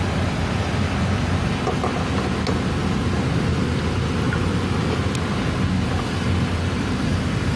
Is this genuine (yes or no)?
yes